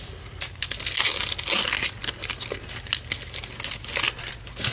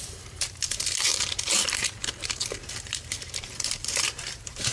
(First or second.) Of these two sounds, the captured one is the first